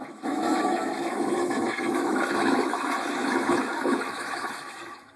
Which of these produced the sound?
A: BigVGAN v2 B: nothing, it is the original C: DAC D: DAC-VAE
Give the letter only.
D